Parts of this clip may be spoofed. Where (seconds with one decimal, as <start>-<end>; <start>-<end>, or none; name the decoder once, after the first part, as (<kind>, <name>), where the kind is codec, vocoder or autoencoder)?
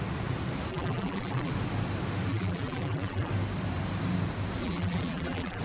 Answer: 0.7-1.5 (vocoder, BigVGAN v2); 2.3-3.3; 4.6-5.6